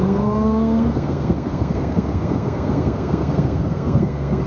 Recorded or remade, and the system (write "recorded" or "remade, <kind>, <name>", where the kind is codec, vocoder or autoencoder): remade, codec, SNAC